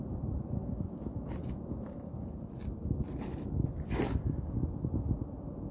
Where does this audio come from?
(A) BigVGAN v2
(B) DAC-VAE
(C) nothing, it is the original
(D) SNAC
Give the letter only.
C